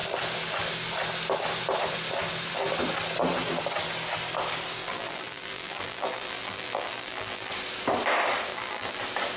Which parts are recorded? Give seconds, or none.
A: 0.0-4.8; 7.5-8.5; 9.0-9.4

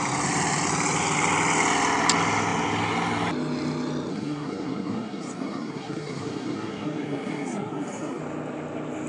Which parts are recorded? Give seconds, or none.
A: 0.0-4.1; 8.2-9.1